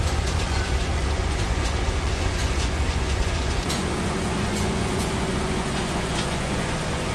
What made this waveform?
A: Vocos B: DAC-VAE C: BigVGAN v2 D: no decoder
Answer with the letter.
A